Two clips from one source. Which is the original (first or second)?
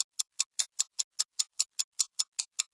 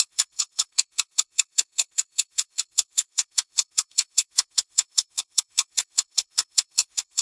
first